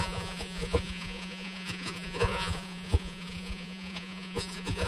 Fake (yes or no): yes